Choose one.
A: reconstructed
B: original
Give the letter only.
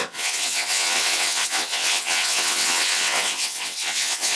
A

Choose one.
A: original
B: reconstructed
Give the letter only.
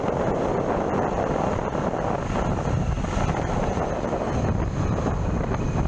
A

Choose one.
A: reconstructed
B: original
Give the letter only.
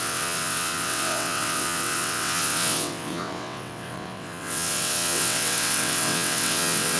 A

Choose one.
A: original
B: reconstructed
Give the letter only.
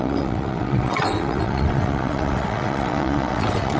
B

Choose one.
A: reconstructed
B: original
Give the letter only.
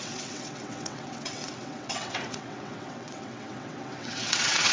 A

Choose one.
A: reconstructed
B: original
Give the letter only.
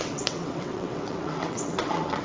A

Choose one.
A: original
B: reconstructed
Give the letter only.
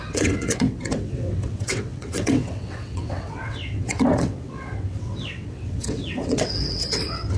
B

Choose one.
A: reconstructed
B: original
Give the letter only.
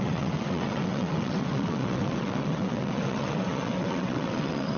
A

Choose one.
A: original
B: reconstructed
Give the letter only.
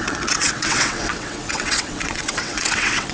B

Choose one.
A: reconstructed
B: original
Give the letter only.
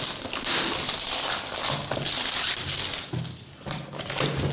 B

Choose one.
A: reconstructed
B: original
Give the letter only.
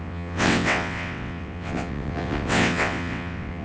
A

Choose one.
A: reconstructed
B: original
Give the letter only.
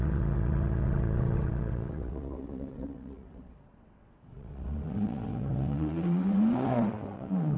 A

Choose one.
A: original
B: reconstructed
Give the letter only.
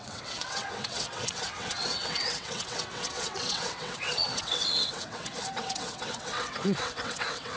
B